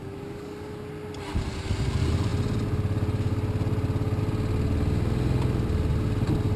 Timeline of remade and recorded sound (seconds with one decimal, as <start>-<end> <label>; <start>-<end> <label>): 0.0-0.7 remade; 0.7-6.6 recorded